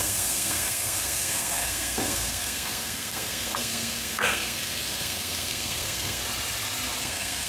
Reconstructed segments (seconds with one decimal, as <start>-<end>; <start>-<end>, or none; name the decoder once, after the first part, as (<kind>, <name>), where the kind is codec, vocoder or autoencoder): 0.0-6.2 (codec, SNAC); 7.0-7.5